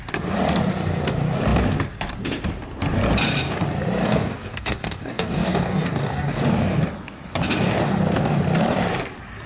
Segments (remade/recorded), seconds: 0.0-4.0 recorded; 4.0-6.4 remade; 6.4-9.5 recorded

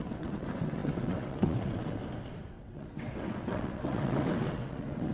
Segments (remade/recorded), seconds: 0.0-2.0 remade; 2.0-2.6 recorded; 2.6-5.1 remade

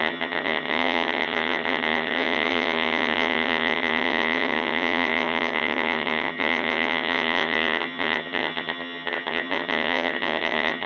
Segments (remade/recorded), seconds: 0.0-10.9 remade

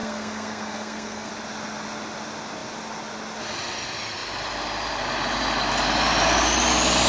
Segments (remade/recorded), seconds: 0.0-1.3 remade; 1.3-7.1 recorded

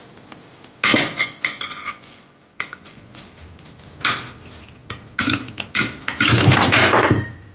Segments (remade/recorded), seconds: 0.0-0.9 recorded; 0.9-3.3 remade; 3.3-7.5 recorded